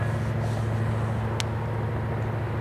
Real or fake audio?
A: real